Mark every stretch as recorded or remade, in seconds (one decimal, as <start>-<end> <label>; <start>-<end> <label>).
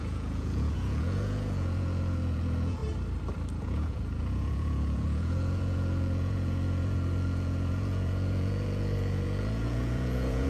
0.0-2.8 remade; 2.8-3.6 recorded; 3.6-10.5 remade